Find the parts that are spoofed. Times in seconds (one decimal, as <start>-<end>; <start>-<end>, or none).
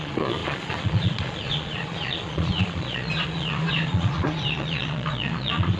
0.0-5.8